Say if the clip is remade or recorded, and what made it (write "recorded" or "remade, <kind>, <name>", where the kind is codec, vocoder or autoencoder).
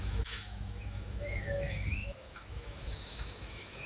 remade, autoencoder, DAC-VAE